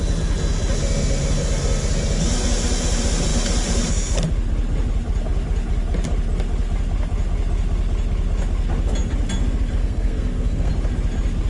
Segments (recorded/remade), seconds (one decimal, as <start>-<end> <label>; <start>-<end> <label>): 0.0-9.8 recorded; 9.8-10.7 remade; 10.7-11.5 recorded